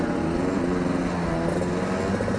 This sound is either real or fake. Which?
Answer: real